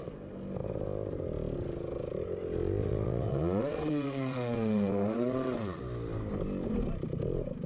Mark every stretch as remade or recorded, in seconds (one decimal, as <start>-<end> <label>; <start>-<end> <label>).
0.0-2.8 recorded; 2.8-5.8 remade; 5.8-7.7 recorded